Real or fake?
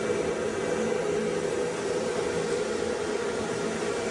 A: real